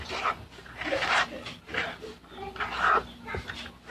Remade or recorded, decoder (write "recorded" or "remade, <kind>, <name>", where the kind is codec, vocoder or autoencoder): recorded